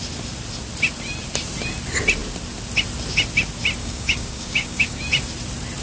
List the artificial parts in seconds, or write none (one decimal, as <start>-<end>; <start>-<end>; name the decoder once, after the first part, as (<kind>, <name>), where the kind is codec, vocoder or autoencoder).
3.8-5.0 (codec, DAC)